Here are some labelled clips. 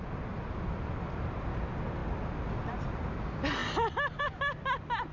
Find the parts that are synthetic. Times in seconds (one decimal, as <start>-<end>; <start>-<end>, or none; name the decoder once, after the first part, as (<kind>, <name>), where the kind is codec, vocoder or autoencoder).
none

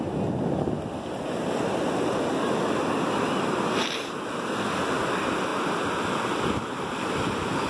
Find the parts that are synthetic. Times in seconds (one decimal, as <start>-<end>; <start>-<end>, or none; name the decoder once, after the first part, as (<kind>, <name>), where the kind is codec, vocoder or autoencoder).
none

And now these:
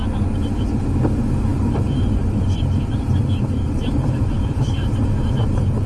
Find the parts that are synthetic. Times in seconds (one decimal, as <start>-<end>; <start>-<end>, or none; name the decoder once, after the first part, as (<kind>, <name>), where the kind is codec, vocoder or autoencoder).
1.5-5.0 (vocoder, BigVGAN v2)